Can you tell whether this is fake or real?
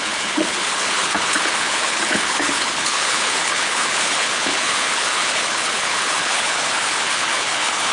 fake